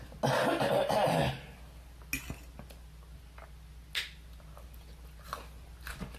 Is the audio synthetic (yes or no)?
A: no